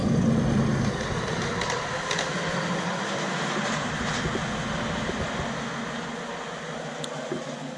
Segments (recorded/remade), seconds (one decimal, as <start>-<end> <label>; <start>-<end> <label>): 0.0-0.7 recorded; 0.7-3.9 remade; 3.9-7.8 recorded